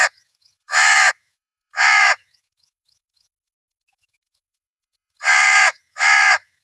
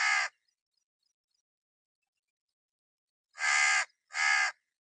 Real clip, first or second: second